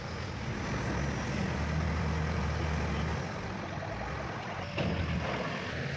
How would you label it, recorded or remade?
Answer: recorded